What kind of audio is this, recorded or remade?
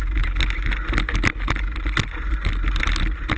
recorded